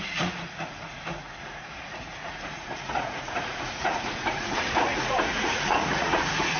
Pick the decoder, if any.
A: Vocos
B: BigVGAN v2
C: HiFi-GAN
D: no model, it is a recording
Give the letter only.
A